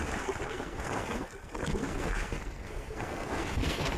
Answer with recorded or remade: remade